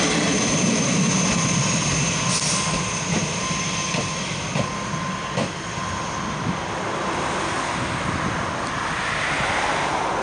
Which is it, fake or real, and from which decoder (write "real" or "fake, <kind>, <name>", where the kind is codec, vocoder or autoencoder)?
real